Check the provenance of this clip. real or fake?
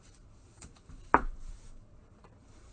fake